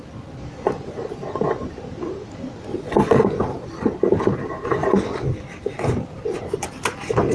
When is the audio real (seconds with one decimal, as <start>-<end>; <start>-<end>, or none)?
0.0-2.7; 3.2-7.3